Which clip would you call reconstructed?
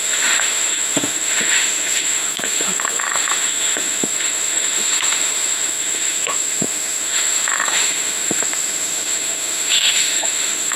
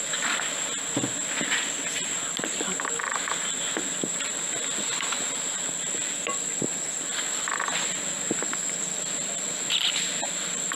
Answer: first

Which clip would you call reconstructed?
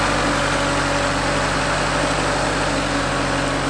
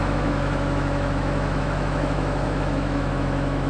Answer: second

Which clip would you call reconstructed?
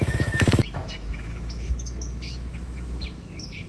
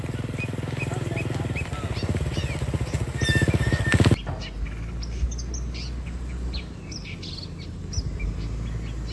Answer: first